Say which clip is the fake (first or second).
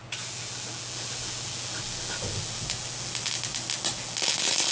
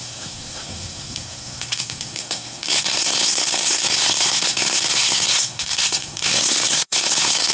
second